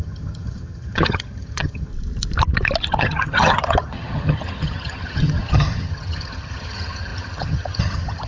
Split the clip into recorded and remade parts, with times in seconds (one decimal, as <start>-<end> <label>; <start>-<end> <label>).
0.0-1.9 remade; 1.9-2.9 recorded; 2.9-8.3 remade